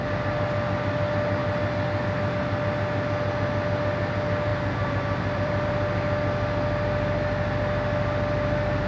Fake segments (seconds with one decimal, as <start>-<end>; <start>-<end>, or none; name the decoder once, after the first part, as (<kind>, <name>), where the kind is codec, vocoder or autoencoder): 4.5-5.7 (vocoder, BigVGAN v2)